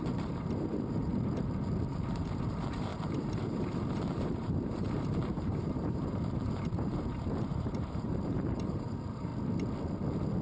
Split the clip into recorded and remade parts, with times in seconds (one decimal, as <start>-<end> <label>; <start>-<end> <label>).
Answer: 0.0-1.1 remade; 1.1-1.9 recorded; 1.9-9.3 remade; 9.3-10.4 recorded